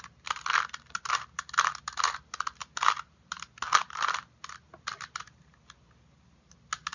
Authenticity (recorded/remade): recorded